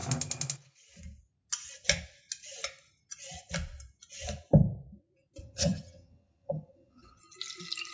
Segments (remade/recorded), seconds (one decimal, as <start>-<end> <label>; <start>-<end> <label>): 0.0-5.4 recorded; 5.4-7.2 remade; 7.2-7.9 recorded